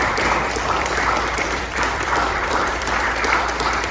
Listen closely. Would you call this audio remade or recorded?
remade